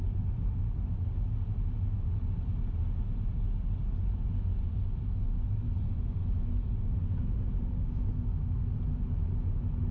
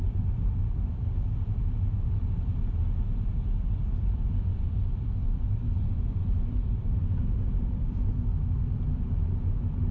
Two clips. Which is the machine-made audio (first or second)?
second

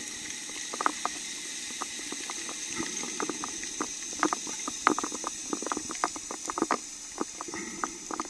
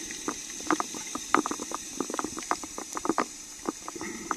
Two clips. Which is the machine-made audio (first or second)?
second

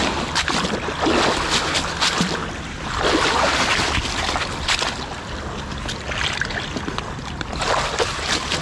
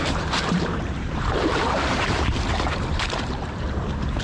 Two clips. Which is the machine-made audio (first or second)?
second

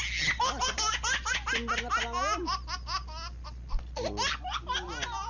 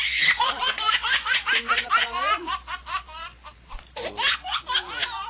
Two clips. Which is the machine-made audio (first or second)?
second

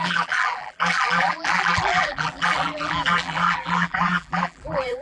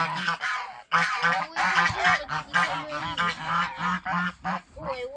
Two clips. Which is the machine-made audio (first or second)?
first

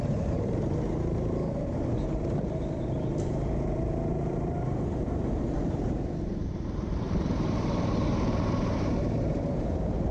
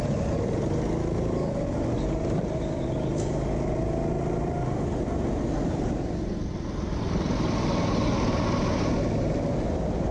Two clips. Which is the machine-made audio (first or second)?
first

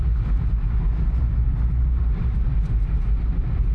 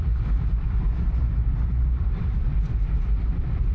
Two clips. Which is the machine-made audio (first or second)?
second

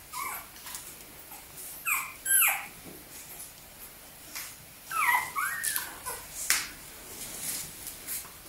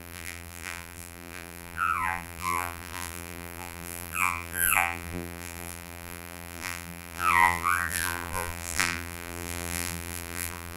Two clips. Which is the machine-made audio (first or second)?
second